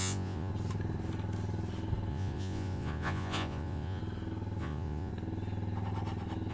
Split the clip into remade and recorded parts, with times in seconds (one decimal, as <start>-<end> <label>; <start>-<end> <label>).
0.0-0.5 remade; 0.5-2.1 recorded; 2.1-4.0 remade; 4.0-4.6 recorded; 4.6-5.1 remade; 5.1-6.5 recorded